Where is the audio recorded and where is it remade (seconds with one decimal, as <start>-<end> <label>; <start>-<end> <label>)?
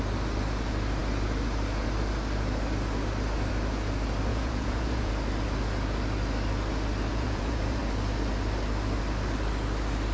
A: 0.0-4.3 recorded; 4.3-5.1 remade; 5.1-7.1 recorded; 7.1-7.8 remade; 7.8-10.1 recorded